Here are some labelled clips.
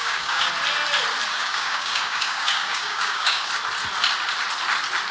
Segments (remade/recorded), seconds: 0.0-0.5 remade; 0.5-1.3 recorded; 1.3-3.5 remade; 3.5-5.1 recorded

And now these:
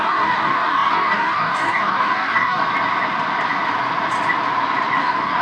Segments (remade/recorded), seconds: 0.0-2.6 remade; 2.6-5.0 recorded; 5.0-5.4 remade

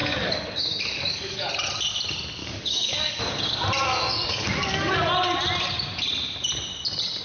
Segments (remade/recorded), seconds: 0.0-1.5 remade; 1.5-2.4 recorded; 2.4-3.2 remade; 3.2-3.8 recorded; 3.8-4.9 remade; 4.9-7.2 recorded

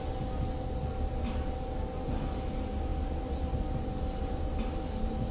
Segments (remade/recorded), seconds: 0.0-5.3 recorded

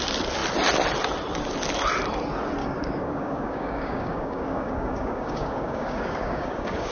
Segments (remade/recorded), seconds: 0.0-2.6 recorded; 2.6-6.9 remade